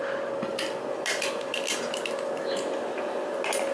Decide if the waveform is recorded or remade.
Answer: recorded